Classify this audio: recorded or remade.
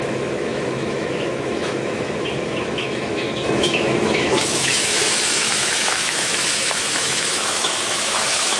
remade